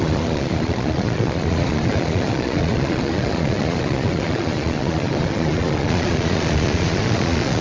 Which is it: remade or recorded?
remade